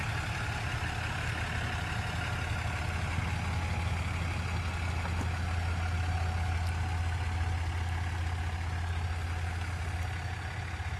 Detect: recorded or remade recorded